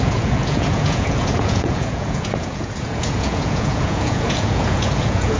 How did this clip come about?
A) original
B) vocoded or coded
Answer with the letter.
B